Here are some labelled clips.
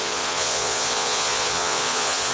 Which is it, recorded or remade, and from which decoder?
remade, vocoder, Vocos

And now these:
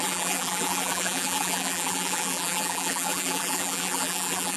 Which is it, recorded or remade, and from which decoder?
remade, vocoder, BigVGAN v2